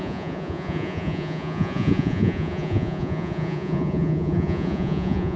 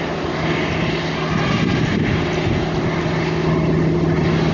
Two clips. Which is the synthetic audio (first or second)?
first